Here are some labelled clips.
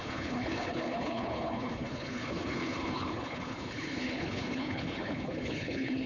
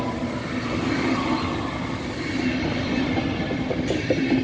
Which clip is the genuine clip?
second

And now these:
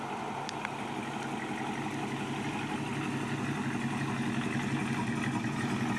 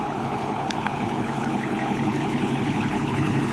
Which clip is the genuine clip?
first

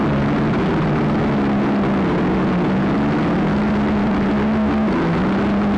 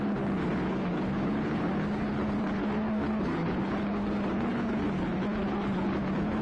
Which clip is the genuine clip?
first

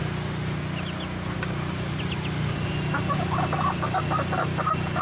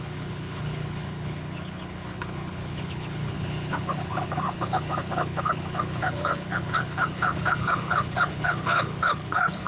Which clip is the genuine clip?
first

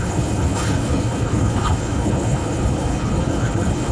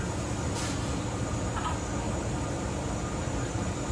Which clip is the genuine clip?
second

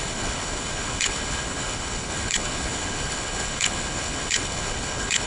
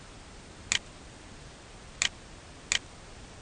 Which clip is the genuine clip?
second